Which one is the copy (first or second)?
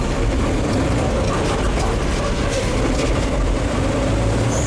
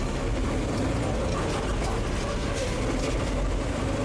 first